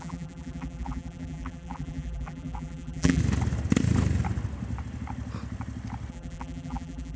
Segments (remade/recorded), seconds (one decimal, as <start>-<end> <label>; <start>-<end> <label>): 0.0-3.2 remade; 3.2-6.1 recorded; 6.1-7.2 remade